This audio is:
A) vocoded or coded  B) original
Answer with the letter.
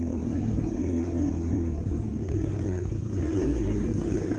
A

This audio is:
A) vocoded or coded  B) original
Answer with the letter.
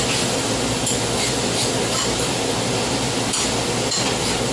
B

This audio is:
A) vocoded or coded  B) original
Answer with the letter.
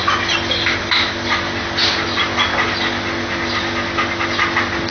B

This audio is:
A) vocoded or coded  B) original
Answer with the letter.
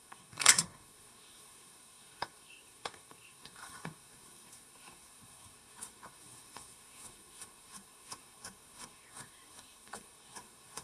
A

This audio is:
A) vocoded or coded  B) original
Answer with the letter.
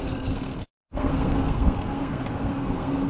A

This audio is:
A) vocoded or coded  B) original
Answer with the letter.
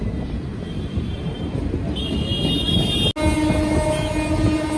B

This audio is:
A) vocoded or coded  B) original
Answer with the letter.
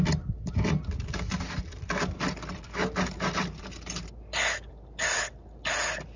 B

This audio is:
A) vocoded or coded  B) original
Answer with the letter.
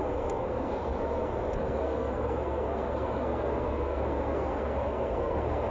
A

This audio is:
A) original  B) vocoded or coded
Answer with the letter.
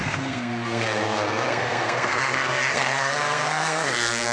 B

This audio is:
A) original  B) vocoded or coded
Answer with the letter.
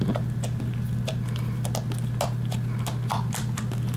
A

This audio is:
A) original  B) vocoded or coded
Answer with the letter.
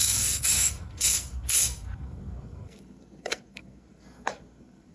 B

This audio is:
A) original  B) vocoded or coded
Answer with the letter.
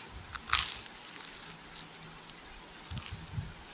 A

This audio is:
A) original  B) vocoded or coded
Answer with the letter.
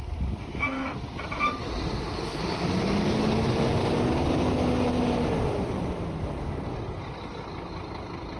A